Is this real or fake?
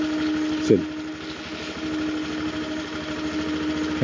real